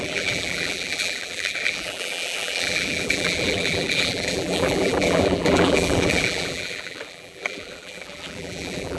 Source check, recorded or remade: remade